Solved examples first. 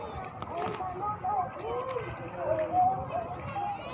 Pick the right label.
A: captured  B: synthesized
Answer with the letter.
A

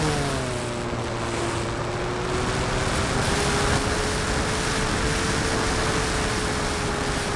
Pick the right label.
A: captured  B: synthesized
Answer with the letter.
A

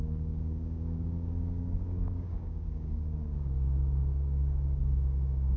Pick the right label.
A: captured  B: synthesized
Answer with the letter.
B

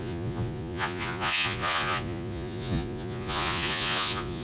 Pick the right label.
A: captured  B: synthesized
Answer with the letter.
B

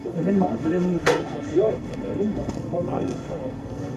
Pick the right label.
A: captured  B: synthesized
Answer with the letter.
B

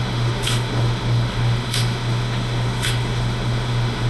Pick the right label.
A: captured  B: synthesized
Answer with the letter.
B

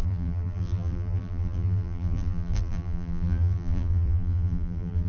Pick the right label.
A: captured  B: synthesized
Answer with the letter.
B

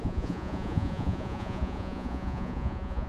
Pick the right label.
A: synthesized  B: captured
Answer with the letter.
A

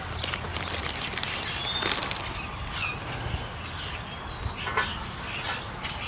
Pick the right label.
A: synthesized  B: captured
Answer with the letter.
B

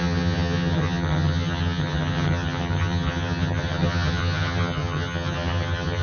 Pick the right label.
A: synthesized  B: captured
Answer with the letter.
A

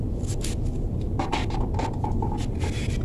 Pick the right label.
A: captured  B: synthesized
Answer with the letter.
A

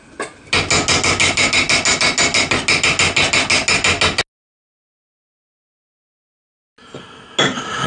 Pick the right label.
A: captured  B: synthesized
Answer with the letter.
A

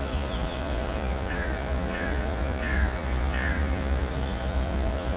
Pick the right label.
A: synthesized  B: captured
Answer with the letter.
A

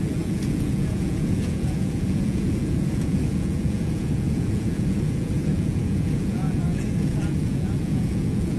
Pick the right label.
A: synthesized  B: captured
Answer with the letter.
A